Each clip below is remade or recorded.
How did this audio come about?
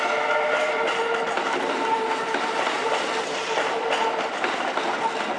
recorded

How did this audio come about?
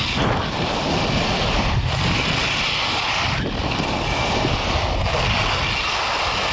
recorded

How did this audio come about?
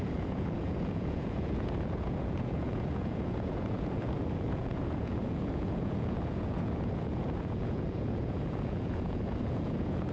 remade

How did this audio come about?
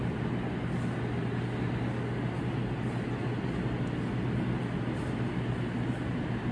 recorded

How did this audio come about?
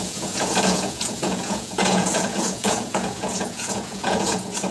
remade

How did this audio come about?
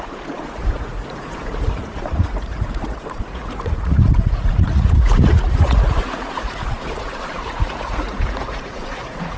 remade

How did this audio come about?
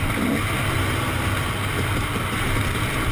recorded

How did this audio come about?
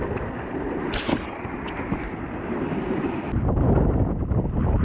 recorded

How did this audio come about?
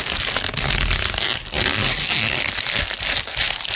recorded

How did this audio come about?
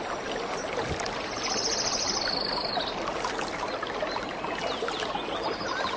recorded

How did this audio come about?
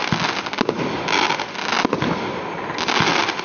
recorded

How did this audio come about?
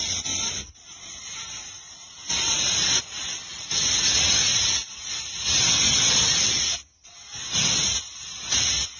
recorded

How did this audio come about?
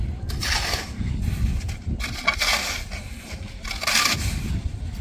recorded